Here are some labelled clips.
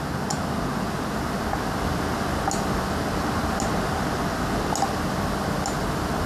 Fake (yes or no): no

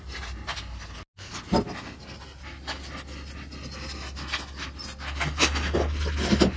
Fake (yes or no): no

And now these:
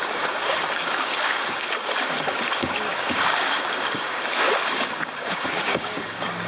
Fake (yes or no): yes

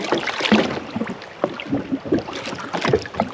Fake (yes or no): no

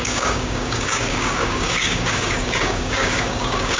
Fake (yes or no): yes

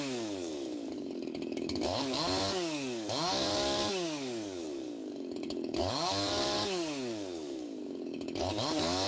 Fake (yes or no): yes